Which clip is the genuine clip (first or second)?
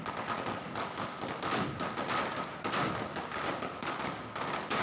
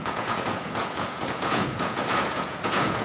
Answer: first